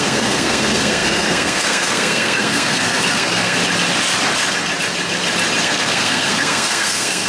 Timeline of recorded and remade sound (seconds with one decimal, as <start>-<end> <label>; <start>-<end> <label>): 0.0-3.6 remade; 3.6-5.6 recorded; 5.6-7.3 remade